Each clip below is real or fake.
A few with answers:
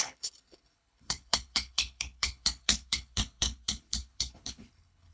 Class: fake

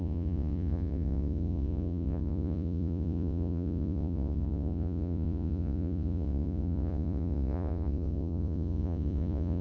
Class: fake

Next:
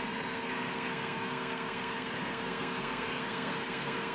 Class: fake